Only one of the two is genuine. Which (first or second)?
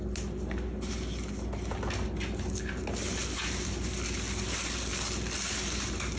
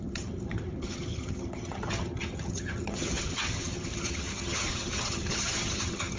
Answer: first